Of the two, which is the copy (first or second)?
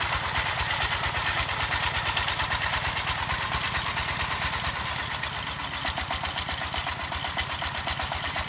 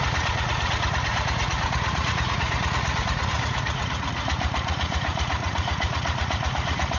second